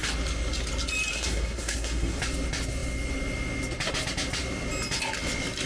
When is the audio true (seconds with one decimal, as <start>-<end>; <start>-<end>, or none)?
0.0-1.1; 2.2-5.7